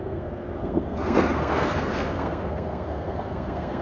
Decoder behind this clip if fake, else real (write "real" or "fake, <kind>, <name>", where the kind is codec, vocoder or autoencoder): fake, codec, SNAC